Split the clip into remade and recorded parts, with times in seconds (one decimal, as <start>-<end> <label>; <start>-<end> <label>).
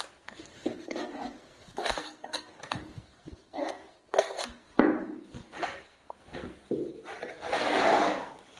0.0-6.6 remade; 6.6-7.3 recorded; 7.3-8.6 remade